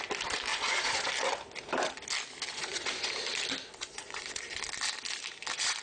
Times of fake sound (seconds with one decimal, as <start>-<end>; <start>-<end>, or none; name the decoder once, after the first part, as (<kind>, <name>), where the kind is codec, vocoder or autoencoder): 0.5-1.1 (vocoder, Vocos); 2.5-3.1; 3.8-4.4